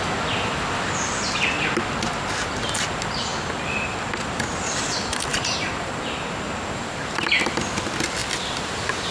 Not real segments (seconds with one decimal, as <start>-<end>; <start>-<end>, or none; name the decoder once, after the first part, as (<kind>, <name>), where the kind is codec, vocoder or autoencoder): 5.3-7.3 (vocoder, BigVGAN v2)